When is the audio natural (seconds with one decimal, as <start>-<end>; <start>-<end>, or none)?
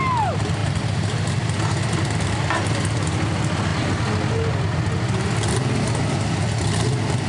0.0-7.3